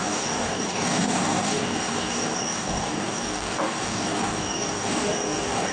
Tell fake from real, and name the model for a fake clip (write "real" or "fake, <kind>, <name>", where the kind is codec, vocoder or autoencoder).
fake, codec, DAC